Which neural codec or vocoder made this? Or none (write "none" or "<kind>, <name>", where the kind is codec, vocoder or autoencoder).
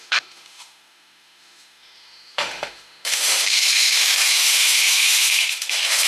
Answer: autoencoder, DAC-VAE